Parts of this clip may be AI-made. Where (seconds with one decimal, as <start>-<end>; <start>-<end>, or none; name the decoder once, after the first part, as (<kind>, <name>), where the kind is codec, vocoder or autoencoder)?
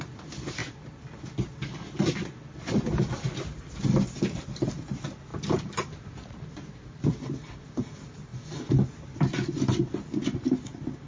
5.3-7.6 (vocoder, BigVGAN v2)